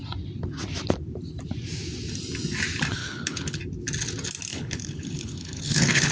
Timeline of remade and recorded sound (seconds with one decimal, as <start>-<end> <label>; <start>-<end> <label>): 0.0-3.0 recorded; 3.0-3.6 remade; 3.6-4.5 recorded; 4.5-6.1 remade